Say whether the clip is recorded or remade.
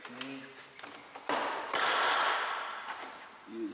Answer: recorded